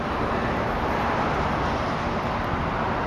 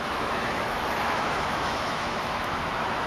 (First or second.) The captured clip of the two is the first